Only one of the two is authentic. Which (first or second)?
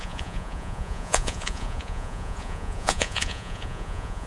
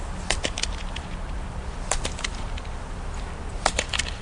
second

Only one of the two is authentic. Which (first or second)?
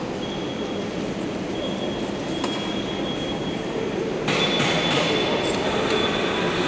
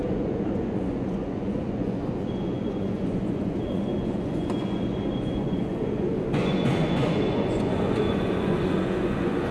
first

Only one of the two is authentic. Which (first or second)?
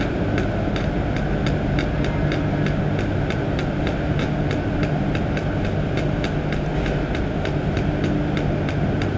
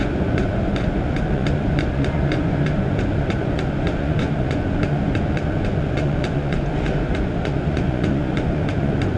first